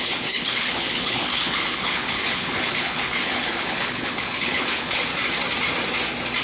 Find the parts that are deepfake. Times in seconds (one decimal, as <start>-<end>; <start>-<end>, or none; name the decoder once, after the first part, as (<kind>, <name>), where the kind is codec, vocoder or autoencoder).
0.0-5.1 (codec, HILCodec)